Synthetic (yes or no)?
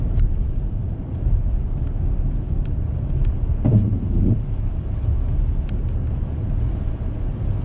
no